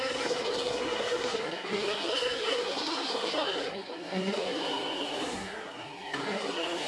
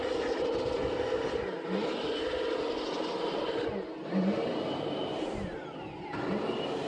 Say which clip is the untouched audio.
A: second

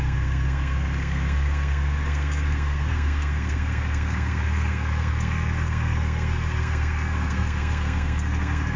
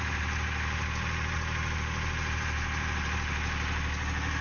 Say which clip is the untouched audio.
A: second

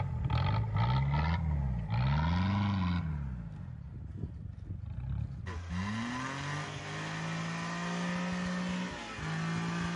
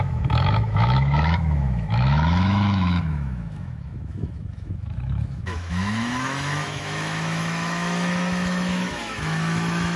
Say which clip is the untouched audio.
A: first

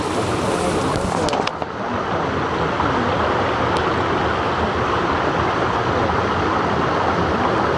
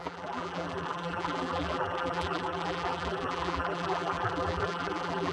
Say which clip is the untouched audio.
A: first